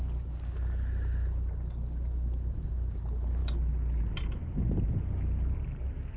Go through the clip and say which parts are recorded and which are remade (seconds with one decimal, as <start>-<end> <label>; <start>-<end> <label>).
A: 0.0-6.2 recorded